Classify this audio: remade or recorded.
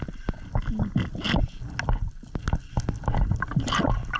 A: recorded